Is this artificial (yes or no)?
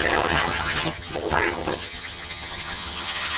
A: yes